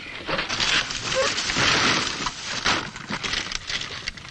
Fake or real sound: real